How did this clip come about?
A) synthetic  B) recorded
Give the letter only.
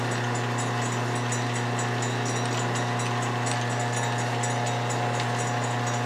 B